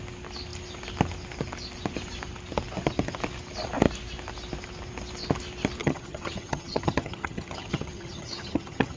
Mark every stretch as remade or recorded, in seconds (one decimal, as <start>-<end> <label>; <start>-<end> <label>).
0.0-5.8 recorded; 5.8-9.0 remade